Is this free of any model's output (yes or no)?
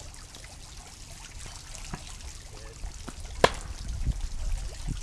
yes